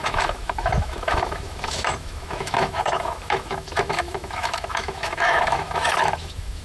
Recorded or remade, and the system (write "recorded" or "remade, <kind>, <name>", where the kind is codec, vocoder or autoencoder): remade, autoencoder, DAC-VAE